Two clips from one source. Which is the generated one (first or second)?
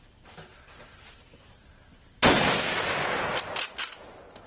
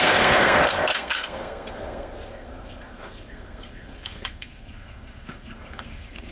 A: second